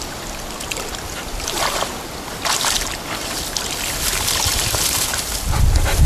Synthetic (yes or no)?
no